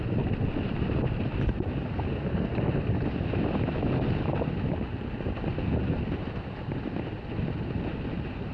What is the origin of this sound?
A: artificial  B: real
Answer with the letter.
B